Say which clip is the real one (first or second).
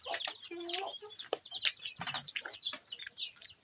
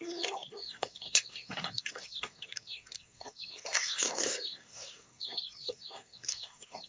first